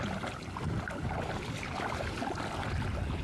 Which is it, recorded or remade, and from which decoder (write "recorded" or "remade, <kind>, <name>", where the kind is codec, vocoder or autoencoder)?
recorded